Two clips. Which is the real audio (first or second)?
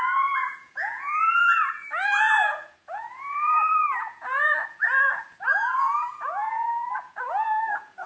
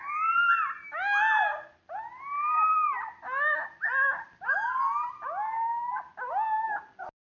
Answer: second